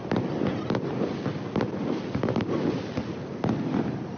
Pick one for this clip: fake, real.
fake